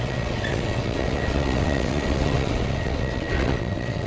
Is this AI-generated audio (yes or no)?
yes